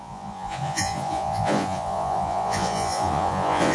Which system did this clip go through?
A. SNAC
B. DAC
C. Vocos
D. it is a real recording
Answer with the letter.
C